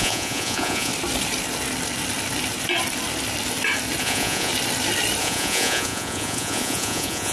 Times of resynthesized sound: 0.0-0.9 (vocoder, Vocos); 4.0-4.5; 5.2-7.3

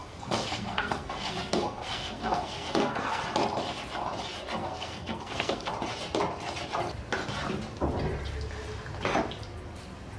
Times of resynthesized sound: 0.0-3.2 (codec, SNAC); 4.6-5.7

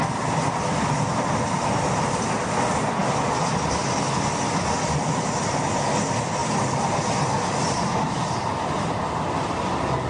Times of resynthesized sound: none

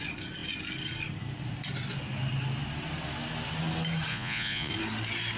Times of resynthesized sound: 4.1-4.7 (vocoder, Vocos)